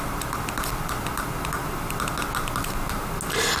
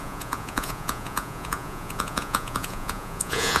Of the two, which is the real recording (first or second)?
first